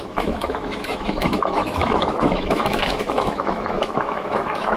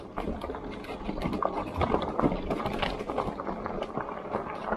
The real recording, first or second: second